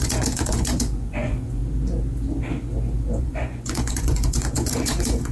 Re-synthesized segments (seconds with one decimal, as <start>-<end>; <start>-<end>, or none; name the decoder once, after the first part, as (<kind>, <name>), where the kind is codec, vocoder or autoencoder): 0.0-1.6 (vocoder, Vocos); 3.2-5.3

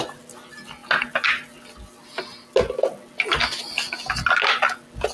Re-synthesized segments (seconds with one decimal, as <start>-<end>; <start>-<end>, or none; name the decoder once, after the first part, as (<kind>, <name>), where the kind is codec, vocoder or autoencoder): none

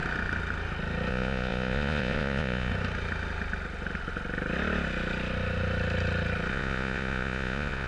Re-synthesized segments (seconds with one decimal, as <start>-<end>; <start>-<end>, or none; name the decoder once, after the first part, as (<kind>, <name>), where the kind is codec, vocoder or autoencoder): 1.1-2.7 (vocoder, Vocos); 6.5-7.9

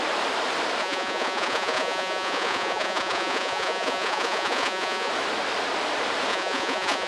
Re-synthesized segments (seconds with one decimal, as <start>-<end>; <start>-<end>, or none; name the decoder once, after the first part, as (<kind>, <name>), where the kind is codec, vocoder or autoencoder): 0.8-5.1 (vocoder, Vocos); 6.3-7.1

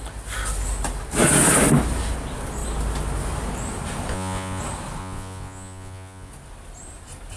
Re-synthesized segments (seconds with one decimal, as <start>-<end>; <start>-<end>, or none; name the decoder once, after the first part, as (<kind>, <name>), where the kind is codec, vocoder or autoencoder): 4.1-4.6 (vocoder, Vocos); 5.0-6.3

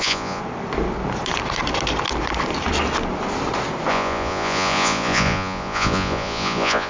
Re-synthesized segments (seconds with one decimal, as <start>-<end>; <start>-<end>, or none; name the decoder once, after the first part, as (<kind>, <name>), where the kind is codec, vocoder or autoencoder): 0.0-0.4 (vocoder, Vocos); 3.9-6.9

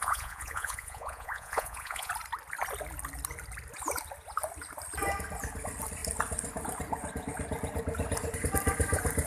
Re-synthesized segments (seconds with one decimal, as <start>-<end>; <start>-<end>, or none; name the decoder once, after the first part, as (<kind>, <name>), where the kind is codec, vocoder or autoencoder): 0.0-2.1 (vocoder, Vocos)